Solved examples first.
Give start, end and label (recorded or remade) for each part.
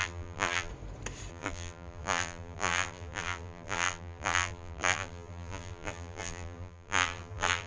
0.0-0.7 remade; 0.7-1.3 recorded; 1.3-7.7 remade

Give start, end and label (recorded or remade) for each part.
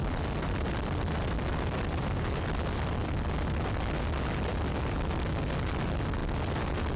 0.0-3.7 remade; 3.7-4.5 recorded; 4.5-5.1 remade; 5.1-7.0 recorded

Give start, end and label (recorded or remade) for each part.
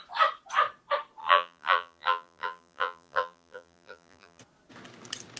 0.0-1.2 recorded; 1.2-4.4 remade; 4.4-5.4 recorded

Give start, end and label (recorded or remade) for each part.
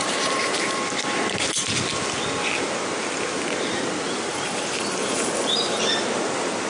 0.0-0.8 remade; 0.8-4.3 recorded; 4.3-5.8 remade; 5.8-6.7 recorded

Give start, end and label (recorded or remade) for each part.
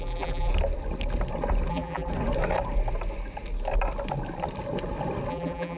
0.0-0.5 remade; 0.5-1.7 recorded; 1.7-2.1 remade; 2.1-5.3 recorded; 5.3-5.8 remade